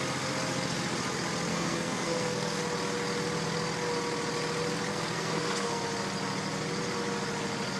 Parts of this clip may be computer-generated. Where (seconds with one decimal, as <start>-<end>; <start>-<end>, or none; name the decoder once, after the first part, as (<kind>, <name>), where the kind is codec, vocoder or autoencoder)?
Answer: 1.5-2.6 (codec, SNAC); 4.9-5.8